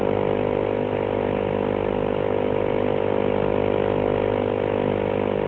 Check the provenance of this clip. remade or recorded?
recorded